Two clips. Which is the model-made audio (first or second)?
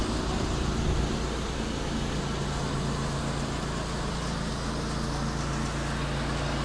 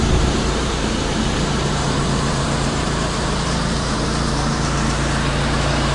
second